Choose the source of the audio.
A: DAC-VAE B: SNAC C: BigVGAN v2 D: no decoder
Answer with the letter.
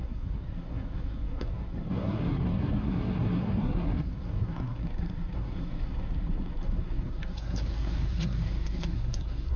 B